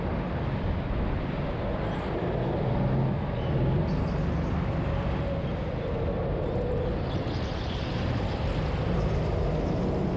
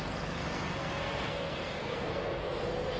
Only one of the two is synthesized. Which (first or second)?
second